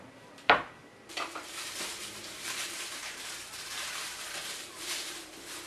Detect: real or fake fake